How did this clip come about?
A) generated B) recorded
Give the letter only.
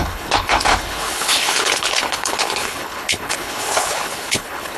A